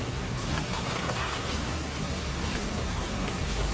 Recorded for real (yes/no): no